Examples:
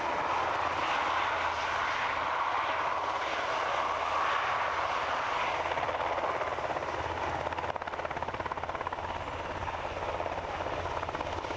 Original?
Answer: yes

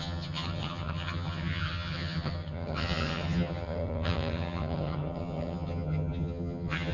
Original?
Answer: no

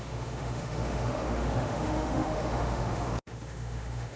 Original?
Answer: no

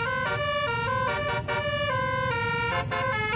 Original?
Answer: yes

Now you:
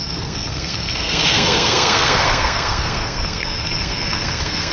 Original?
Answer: no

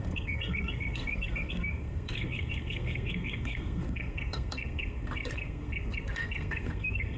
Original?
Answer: no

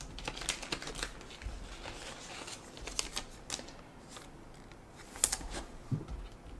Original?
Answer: yes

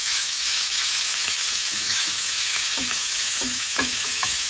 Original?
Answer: no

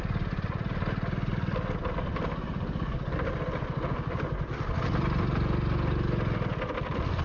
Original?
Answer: yes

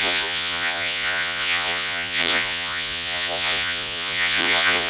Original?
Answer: no